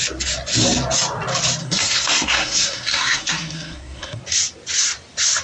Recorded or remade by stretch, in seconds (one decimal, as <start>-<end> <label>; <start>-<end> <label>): 0.0-1.6 recorded; 1.6-4.2 remade; 4.2-5.4 recorded